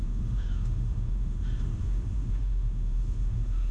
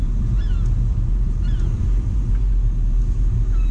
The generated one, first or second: first